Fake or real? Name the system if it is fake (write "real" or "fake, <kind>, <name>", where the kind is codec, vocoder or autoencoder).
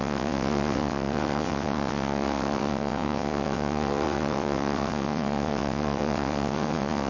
fake, vocoder, WaveNeXt